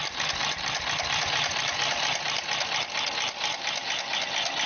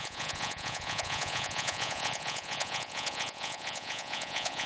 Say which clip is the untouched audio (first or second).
first